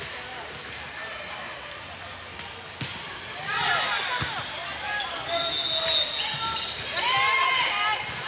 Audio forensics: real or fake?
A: real